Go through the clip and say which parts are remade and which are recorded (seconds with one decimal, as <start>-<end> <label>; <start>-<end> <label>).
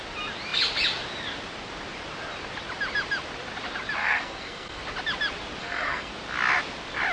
0.0-4.0 recorded; 4.0-4.8 remade; 4.8-5.6 recorded; 5.6-6.1 remade; 6.1-7.1 recorded